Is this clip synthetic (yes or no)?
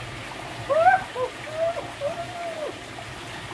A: no